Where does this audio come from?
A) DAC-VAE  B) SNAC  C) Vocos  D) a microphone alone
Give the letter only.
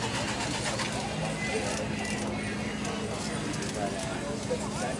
D